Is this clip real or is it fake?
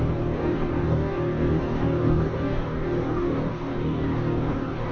fake